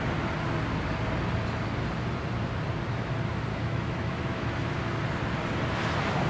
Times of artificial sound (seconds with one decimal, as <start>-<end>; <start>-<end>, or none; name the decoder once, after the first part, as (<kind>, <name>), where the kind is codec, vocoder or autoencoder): 3.5-4.9 (autoencoder, DAC-VAE)